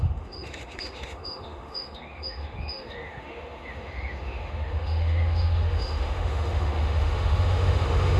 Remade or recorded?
remade